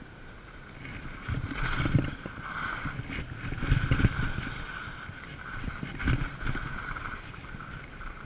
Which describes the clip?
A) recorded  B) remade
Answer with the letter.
A